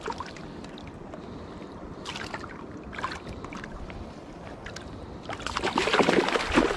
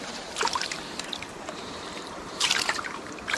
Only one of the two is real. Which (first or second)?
first